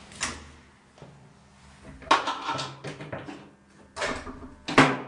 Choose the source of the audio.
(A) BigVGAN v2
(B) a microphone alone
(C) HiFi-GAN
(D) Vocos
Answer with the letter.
B